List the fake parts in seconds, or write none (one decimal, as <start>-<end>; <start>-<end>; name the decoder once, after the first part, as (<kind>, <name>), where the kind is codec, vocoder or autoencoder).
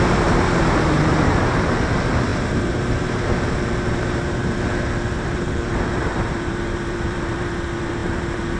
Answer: 0.0-8.6 (vocoder, BigVGAN v2)